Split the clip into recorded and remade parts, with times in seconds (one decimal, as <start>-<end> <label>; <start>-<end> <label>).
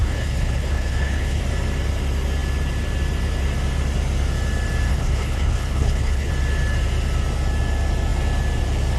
0.0-1.4 remade; 1.4-4.9 recorded; 4.9-6.3 remade; 6.3-9.0 recorded